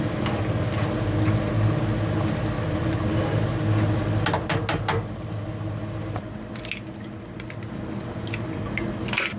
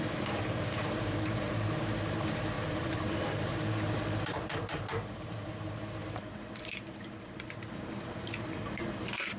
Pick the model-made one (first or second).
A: second